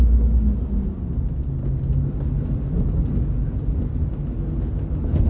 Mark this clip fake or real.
real